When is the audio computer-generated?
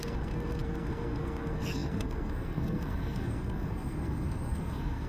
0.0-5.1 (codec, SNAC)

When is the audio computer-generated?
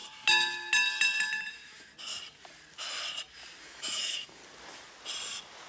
1.5-1.9 (autoencoder, DAC-VAE); 3.6-4.4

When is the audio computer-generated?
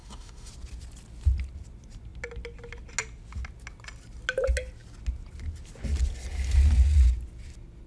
0.0-0.5 (autoencoder, DAC-VAE)